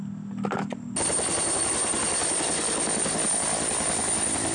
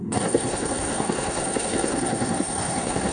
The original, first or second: first